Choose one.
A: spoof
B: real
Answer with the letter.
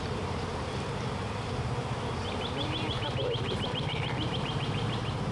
A